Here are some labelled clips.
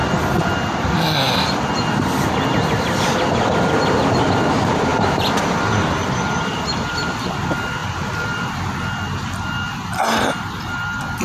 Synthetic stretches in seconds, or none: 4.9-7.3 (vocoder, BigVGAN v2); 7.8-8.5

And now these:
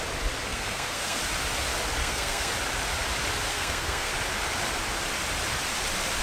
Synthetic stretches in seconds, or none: 0.5-1.2 (codec, SNAC); 2.0-2.5; 3.5-4.1